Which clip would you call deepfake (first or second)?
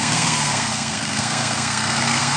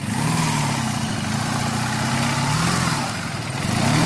first